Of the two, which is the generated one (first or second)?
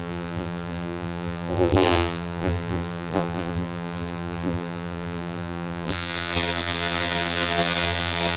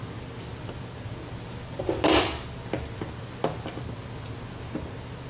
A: first